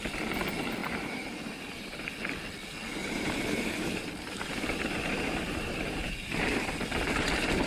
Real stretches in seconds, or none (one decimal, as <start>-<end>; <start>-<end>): 0.0-0.8; 2.0-3.0; 6.7-7.7